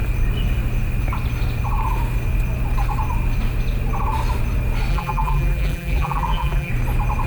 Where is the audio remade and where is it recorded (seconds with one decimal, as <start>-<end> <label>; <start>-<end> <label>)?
0.0-4.9 recorded; 4.9-6.7 remade; 6.7-7.3 recorded